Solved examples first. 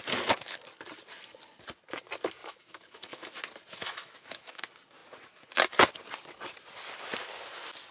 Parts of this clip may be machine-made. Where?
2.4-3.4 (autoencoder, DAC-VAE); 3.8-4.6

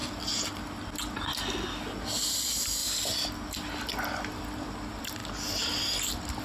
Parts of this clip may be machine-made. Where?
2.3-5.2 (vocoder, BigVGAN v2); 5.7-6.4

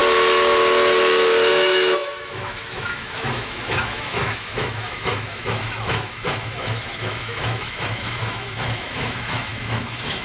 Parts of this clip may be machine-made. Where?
1.5-10.2 (autoencoder, DAC-VAE)

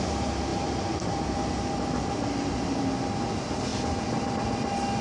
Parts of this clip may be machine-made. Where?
none

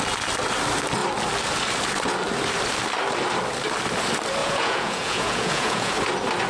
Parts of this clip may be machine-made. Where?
4.4-5.9 (vocoder, Vocos)